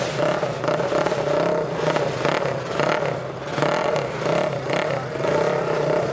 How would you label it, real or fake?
real